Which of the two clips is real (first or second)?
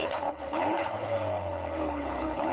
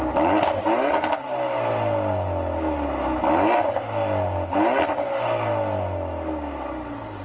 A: second